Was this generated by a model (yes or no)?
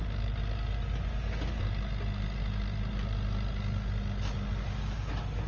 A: no